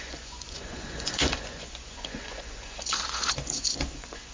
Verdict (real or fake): fake